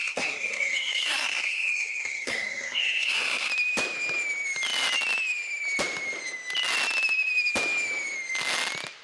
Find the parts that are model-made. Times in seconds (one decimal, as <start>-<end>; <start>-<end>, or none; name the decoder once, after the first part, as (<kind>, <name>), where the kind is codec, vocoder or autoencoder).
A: 0.0-3.5 (codec, SNAC)